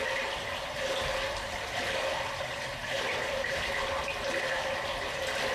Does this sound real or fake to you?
real